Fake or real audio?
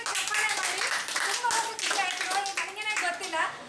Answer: real